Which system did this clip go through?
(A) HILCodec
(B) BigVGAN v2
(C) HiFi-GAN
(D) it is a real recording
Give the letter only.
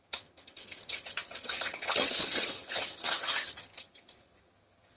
C